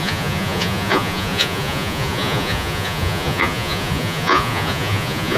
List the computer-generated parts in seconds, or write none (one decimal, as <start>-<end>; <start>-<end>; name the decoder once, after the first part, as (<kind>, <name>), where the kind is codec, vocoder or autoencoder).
0.0-5.4 (vocoder, Vocos)

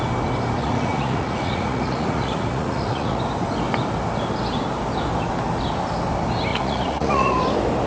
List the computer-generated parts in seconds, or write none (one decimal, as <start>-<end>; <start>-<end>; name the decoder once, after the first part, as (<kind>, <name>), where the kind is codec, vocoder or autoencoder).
0.6-3.2 (vocoder, Vocos); 6.5-7.4